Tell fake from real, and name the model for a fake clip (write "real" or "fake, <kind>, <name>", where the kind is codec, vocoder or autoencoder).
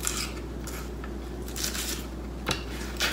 real